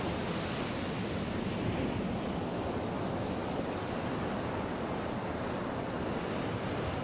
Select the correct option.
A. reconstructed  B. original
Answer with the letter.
B